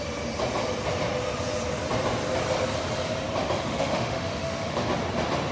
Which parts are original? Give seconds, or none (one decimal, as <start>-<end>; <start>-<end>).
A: 0.0-3.6; 4.9-5.5